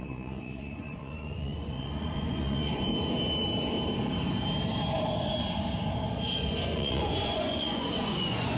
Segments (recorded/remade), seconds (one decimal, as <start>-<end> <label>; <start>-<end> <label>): 0.0-2.9 remade; 2.9-6.6 recorded; 6.6-8.6 remade